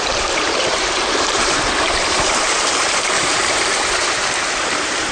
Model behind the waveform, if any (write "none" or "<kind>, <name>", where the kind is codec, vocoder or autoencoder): vocoder, BigVGAN v2